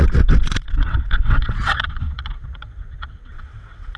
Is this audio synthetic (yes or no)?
yes